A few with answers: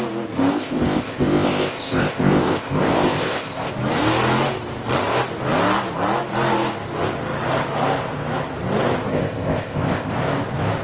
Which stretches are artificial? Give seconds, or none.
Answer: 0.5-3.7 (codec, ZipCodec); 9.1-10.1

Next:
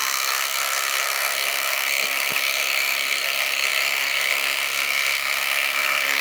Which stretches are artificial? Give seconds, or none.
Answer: 0.0-6.2 (codec, SNAC)

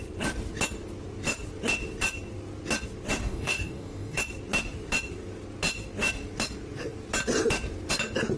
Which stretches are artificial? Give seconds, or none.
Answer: 3.2-4.2 (codec, DAC)

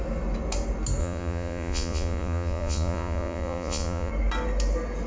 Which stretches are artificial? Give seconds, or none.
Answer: 1.0-4.1 (vocoder, Vocos)

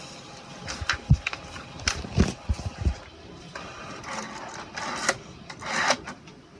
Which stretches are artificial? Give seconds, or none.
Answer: none

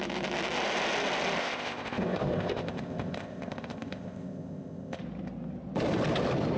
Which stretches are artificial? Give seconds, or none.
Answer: 1.4-5.0 (codec, ZipCodec)

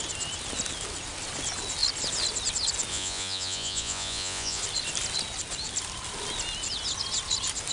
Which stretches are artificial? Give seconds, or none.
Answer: 2.9-4.6 (vocoder, Vocos)

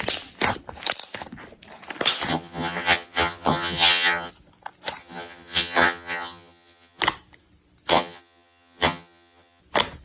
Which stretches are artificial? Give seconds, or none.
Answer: 2.3-4.3 (vocoder, HiFi-GAN); 5.0-7.0; 7.9-9.6